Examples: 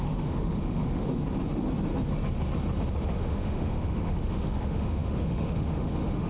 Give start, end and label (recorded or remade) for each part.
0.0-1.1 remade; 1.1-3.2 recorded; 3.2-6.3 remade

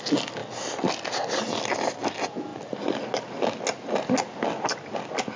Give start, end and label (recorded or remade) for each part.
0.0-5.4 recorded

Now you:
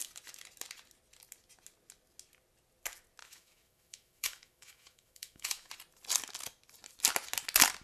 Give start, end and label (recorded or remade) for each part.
0.0-3.2 recorded; 3.2-5.7 remade; 5.7-7.8 recorded

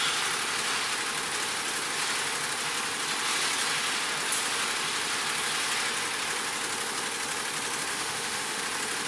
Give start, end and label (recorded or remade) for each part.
0.0-7.9 recorded; 7.9-8.6 remade; 8.6-9.1 recorded